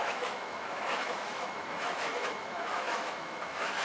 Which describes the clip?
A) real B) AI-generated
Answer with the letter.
B